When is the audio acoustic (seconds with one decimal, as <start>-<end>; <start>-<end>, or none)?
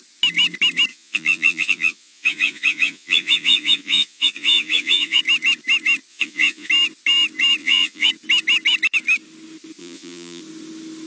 0.0-0.9; 5.2-6.1; 6.7-7.6; 8.1-9.8; 10.4-11.1